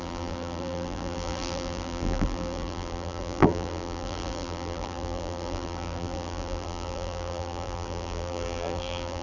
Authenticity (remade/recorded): remade